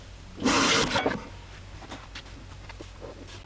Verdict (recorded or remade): recorded